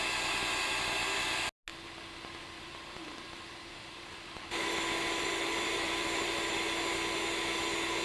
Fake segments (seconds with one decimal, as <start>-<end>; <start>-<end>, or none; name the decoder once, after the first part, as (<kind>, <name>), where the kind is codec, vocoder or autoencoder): 1.7-6.5 (vocoder, BigVGAN v2)